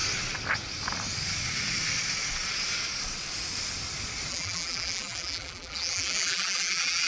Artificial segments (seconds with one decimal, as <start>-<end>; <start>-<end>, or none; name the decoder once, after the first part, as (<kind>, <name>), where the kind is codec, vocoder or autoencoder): 4.3-7.1 (vocoder, BigVGAN v2)